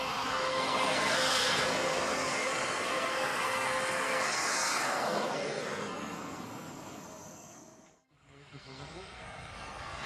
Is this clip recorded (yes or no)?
no